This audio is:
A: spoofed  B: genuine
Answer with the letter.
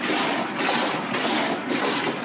B